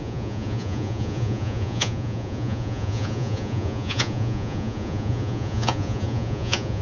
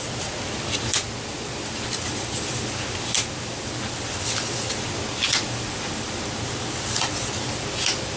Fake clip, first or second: first